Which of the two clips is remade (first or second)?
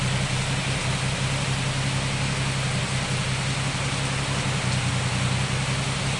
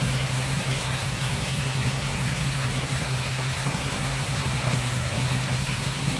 second